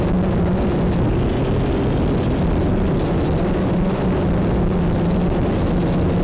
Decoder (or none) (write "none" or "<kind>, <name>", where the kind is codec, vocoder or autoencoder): none